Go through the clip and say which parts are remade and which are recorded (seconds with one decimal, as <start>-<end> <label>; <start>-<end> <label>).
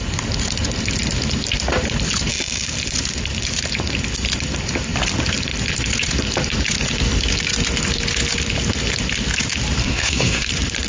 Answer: 0.0-9.8 recorded; 9.8-10.5 remade; 10.5-10.9 recorded